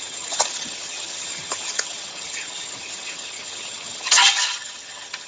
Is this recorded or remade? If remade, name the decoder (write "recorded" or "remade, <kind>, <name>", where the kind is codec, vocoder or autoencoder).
remade, vocoder, HiFi-GAN